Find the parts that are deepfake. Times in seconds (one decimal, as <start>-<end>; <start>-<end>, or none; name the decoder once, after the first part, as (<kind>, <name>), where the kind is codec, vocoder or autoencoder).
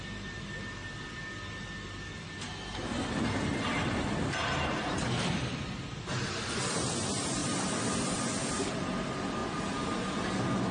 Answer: none